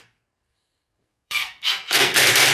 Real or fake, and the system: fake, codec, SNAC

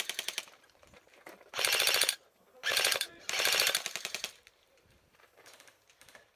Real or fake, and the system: fake, vocoder, BigVGAN v2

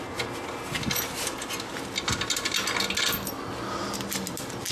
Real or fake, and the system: real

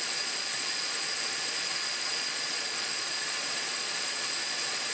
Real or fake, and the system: fake, vocoder, Vocos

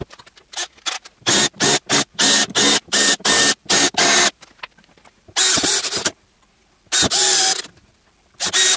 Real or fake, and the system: real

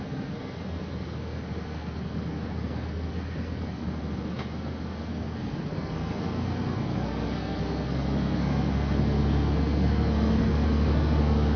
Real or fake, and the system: fake, codec, SNAC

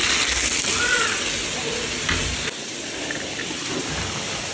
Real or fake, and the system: real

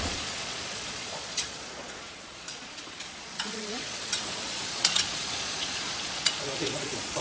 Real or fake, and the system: fake, vocoder, Vocos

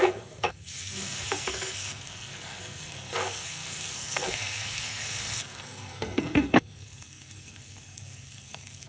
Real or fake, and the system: fake, codec, SNAC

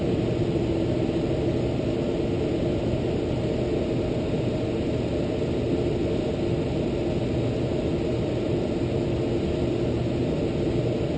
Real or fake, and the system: real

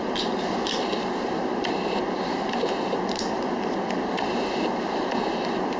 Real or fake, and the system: fake, vocoder, BigVGAN v2